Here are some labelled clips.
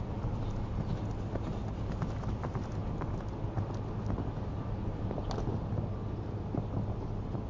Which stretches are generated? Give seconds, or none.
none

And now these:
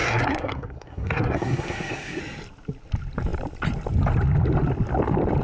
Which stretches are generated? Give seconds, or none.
0.0-2.2

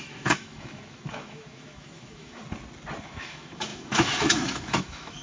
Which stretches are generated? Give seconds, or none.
0.0-2.4; 3.0-5.2

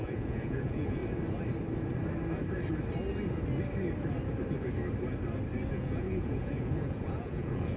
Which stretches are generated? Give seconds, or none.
0.0-1.0; 5.7-7.8

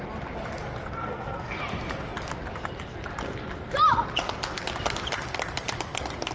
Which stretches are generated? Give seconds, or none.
1.0-1.6

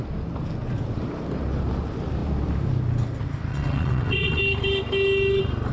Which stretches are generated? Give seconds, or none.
3.5-4.4